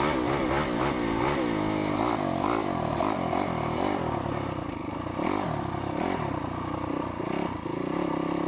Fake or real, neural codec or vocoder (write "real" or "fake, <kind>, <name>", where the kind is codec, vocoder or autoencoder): real